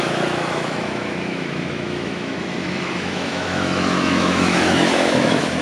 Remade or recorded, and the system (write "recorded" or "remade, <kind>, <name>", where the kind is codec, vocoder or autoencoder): remade, autoencoder, DAC-VAE